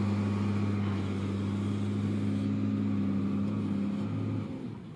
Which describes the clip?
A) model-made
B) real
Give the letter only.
B